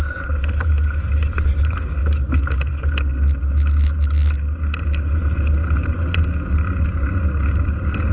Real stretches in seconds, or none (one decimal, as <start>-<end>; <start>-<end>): 0.0-8.1